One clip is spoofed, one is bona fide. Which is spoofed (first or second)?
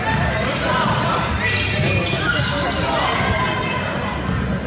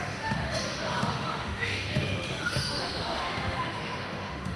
second